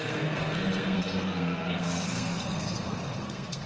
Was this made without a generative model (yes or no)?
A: no